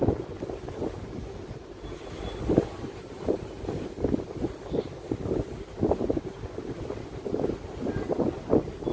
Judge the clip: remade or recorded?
recorded